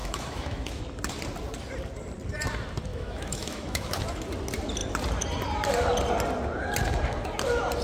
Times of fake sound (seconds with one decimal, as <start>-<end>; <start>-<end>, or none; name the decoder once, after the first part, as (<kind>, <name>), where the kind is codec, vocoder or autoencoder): 0.0-0.8 (autoencoder, DAC-VAE); 2.9-4.0